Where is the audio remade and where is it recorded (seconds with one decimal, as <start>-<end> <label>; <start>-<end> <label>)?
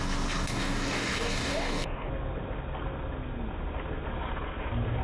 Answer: 0.0-0.4 recorded; 0.4-2.1 remade; 2.1-5.0 recorded